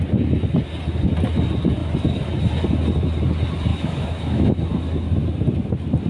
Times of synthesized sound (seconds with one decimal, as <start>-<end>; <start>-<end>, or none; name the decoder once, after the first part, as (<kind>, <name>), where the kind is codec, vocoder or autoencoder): 3.7-4.6 (autoencoder, DAC-VAE)